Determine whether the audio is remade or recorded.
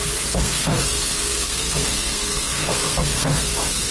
remade